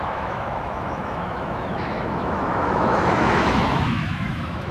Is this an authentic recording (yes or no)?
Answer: no